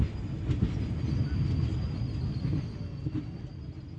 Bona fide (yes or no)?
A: yes